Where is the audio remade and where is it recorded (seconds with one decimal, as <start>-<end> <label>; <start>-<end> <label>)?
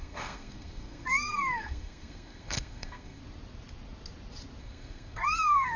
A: 0.0-3.2 remade; 3.2-4.6 recorded; 4.6-5.8 remade